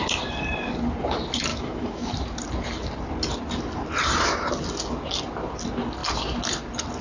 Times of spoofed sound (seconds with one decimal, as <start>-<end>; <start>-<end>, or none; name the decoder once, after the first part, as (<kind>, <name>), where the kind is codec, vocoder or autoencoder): 1.5-2.1 (autoencoder, DAC-VAE)